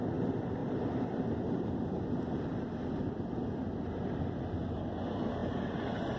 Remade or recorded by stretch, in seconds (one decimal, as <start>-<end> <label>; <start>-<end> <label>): 0.0-0.6 recorded; 0.6-2.1 remade; 2.1-6.2 recorded